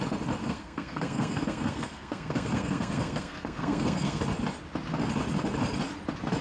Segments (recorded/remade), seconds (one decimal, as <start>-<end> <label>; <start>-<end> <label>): 0.0-0.4 recorded; 0.4-4.2 remade; 4.2-6.4 recorded